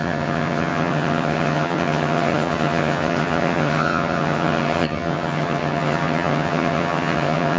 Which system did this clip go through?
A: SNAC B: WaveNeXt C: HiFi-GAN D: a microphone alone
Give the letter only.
C